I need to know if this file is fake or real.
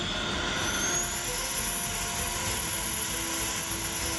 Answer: real